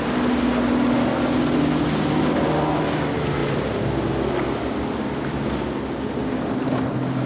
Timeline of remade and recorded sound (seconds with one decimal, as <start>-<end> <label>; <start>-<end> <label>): 0.0-7.3 recorded

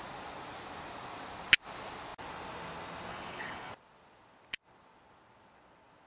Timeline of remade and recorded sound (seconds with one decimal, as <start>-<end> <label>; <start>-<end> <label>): 0.0-3.1 recorded; 3.1-3.7 remade; 3.7-6.1 recorded

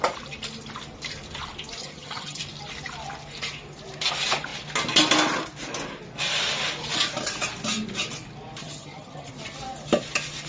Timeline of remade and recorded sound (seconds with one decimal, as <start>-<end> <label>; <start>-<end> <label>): 0.0-1.8 recorded; 1.8-2.4 remade; 2.4-8.6 recorded; 8.6-9.3 remade; 9.3-10.5 recorded

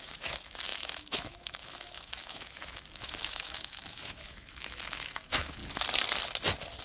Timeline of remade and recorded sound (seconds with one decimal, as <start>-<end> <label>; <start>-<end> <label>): 0.0-5.6 remade; 5.6-6.8 recorded

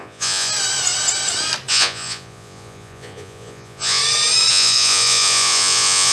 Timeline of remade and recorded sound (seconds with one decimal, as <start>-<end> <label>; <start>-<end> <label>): 0.0-0.5 remade; 0.5-1.7 recorded; 1.7-4.0 remade; 4.0-4.5 recorded; 4.5-6.1 remade

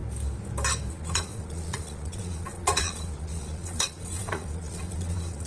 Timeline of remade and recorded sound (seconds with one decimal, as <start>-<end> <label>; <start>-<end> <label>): 0.0-0.9 recorded; 0.9-5.5 remade